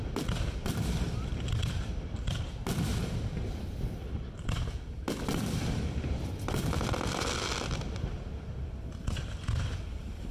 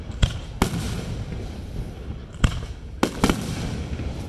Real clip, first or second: second